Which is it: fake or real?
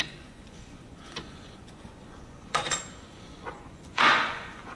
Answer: fake